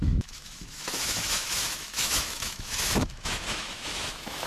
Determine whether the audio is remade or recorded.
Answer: remade